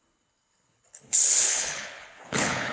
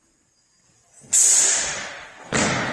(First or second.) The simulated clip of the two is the first